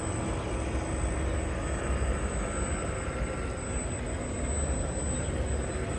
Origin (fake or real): real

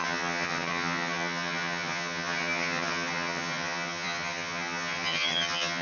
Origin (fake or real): fake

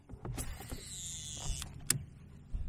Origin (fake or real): real